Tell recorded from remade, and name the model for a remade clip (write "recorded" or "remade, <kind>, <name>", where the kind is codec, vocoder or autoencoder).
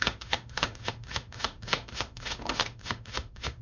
remade, autoencoder, DAC-VAE